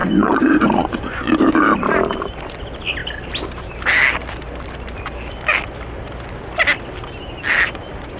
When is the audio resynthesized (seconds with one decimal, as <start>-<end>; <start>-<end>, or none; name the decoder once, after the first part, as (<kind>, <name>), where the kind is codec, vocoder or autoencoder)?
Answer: 0.0-1.3 (vocoder, Vocos)